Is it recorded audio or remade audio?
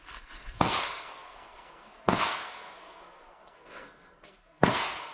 remade